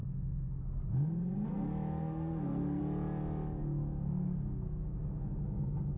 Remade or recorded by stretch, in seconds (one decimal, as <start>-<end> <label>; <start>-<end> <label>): 0.0-0.6 remade; 0.6-2.0 recorded; 2.0-2.8 remade; 2.8-3.6 recorded; 3.6-5.4 remade; 5.4-6.0 recorded

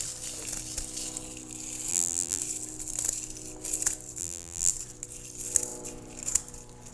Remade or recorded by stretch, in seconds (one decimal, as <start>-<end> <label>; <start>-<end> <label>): 0.0-1.9 recorded; 1.9-2.4 remade; 2.4-4.2 recorded; 4.2-4.7 remade; 4.7-6.9 recorded